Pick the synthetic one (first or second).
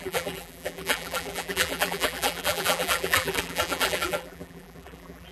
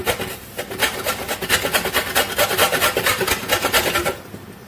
first